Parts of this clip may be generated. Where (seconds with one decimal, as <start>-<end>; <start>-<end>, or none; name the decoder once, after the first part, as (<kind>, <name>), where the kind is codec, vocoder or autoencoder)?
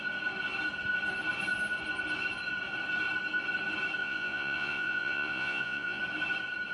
4.0-6.0 (vocoder, Vocos)